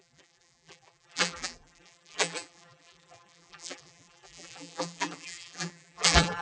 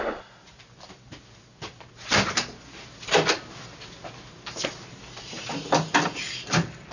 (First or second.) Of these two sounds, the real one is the second